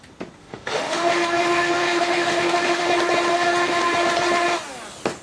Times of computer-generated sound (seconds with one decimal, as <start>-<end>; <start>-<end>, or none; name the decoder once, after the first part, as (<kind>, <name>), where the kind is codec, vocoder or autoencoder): 0.4-2.9 (autoencoder, DAC-VAE); 3.3-3.8

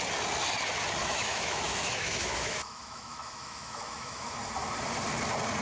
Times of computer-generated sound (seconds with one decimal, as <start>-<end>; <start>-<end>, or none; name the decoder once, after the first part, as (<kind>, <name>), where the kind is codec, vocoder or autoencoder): 1.0-4.4 (autoencoder, DAC-VAE)

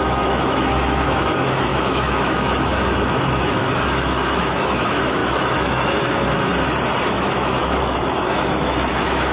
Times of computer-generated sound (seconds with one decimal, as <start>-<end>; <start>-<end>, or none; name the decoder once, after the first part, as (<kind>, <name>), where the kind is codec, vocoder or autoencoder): 0.0-6.5 (autoencoder, DAC-VAE); 7.0-9.3

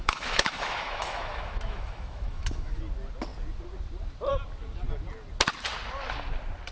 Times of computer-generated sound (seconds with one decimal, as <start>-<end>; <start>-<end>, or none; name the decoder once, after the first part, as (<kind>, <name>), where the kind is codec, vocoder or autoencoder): 0.0-2.8 (autoencoder, DAC-VAE)

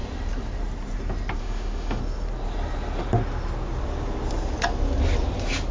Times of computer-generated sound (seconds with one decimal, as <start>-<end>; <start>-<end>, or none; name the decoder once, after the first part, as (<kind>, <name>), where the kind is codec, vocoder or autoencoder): 1.4-2.0 (autoencoder, DAC-VAE)